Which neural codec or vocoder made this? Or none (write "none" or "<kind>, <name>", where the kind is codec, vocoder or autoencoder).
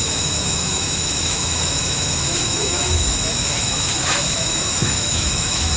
autoencoder, DAC-VAE